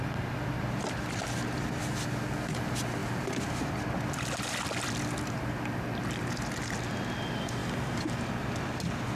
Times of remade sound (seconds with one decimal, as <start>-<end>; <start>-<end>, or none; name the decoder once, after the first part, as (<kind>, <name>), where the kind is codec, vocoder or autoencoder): none